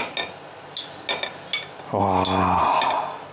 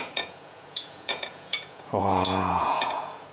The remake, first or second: second